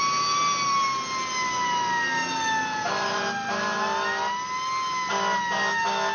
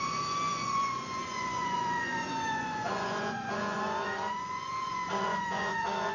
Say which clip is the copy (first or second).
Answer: second